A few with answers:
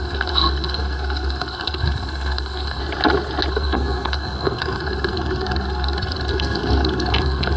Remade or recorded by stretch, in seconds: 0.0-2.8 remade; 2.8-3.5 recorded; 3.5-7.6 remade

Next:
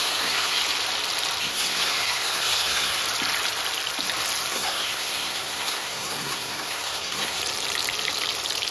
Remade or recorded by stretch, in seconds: 0.0-0.6 remade; 0.6-1.4 recorded; 1.4-3.0 remade; 3.0-4.5 recorded; 4.5-7.4 remade; 7.4-8.7 recorded

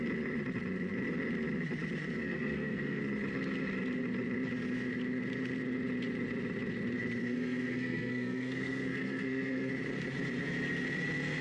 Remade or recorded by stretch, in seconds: 0.0-2.2 recorded; 2.2-3.0 remade; 3.0-7.2 recorded; 7.2-9.7 remade; 9.7-11.4 recorded

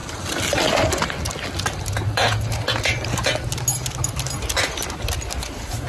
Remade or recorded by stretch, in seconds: 0.0-5.9 recorded